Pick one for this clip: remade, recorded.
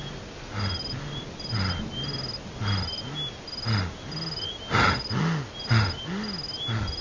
recorded